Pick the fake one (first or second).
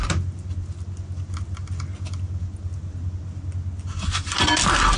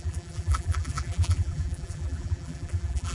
second